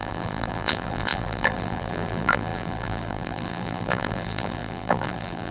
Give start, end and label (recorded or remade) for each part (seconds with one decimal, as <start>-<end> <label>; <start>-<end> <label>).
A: 0.0-5.5 remade